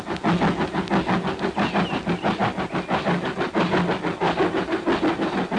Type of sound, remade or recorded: recorded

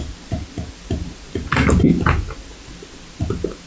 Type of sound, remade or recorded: recorded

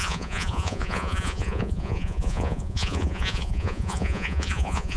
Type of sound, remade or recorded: remade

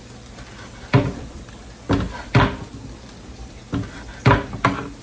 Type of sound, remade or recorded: recorded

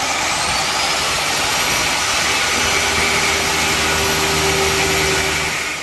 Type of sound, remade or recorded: recorded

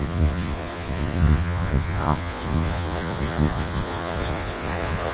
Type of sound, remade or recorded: remade